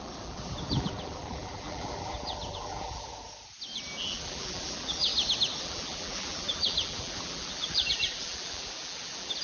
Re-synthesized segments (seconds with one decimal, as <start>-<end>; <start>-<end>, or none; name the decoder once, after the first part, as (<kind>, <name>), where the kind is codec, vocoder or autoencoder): 0.0-3.1 (vocoder, BigVGAN v2); 4.0-5.1; 5.6-9.4